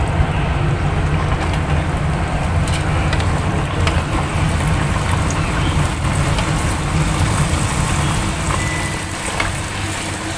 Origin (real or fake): real